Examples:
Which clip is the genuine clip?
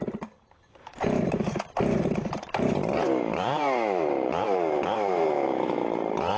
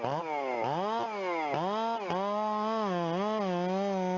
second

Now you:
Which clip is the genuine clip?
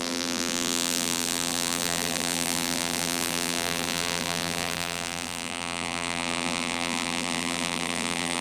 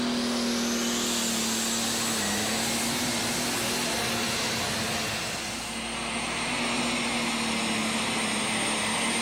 second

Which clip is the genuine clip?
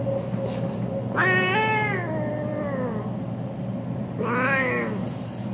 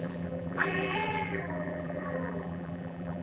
first